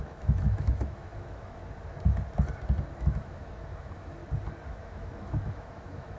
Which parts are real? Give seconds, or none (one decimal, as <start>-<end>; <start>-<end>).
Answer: 1.6-3.0; 4.2-4.7